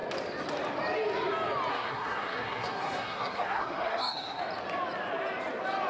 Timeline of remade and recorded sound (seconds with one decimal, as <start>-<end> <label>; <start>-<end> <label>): 0.0-1.7 recorded; 1.7-4.4 remade; 4.4-5.9 recorded